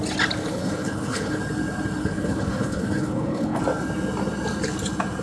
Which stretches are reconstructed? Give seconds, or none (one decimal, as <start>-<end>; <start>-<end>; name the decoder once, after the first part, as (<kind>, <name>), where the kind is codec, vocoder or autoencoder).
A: 0.4-1.4 (codec, HILCodec); 2.0-3.6